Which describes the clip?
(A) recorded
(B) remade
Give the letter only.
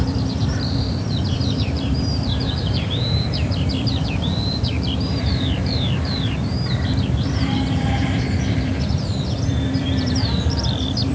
B